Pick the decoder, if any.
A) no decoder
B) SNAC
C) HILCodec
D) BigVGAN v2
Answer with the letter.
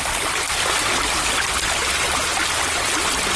A